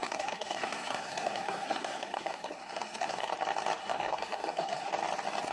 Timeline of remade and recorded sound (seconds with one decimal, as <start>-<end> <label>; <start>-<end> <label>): 0.0-3.3 remade; 3.3-3.8 recorded; 3.8-4.9 remade; 4.9-5.5 recorded